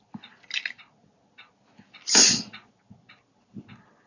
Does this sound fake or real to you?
real